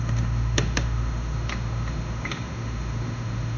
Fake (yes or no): yes